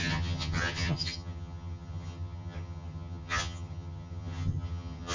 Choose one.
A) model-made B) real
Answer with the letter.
A